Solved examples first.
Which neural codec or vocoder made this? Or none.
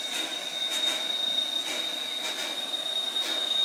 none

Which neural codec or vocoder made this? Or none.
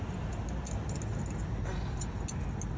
none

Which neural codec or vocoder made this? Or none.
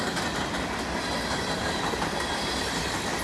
none